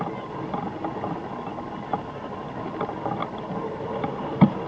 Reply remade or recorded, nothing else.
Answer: recorded